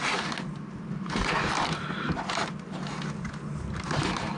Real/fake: real